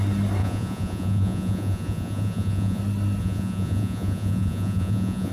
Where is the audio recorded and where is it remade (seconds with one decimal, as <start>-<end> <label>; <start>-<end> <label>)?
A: 0.0-0.4 recorded; 0.4-2.8 remade; 2.8-3.2 recorded; 3.2-5.3 remade